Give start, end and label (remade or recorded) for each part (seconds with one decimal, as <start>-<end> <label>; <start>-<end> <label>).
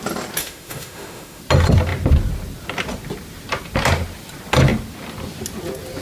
0.0-0.4 recorded; 0.4-1.4 remade; 1.4-6.0 recorded